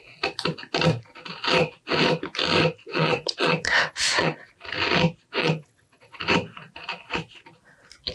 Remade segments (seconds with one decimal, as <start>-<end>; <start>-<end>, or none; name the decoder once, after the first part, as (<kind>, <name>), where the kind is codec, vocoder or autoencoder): 2.9-4.5 (vocoder, WaveNeXt); 5.4-6.2